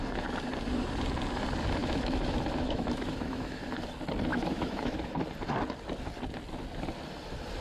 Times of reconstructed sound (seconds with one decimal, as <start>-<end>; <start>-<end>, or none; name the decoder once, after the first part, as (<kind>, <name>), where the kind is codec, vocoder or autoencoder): 1.8-3.6 (autoencoder, DAC-VAE); 4.3-5.2